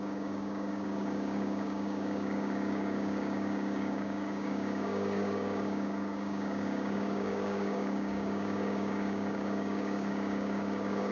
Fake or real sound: fake